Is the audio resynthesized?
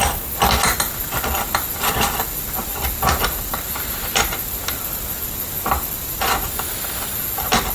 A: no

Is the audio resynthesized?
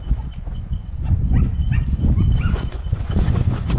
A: yes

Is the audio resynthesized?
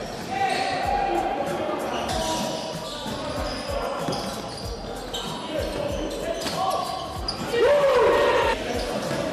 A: no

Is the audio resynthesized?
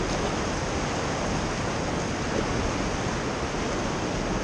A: no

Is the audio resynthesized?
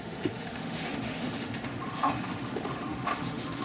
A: yes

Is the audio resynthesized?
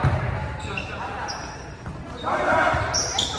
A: yes